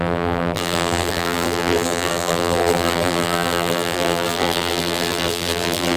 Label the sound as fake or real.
fake